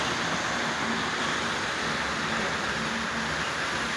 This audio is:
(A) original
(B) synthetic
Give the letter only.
A